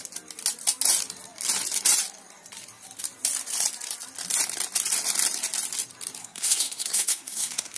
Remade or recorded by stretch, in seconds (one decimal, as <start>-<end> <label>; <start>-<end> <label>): 0.0-6.2 recorded; 6.2-7.8 remade